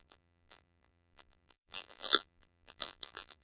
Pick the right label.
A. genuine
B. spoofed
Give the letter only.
B